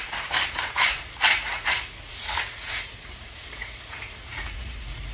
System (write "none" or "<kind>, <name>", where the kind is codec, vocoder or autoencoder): vocoder, Vocos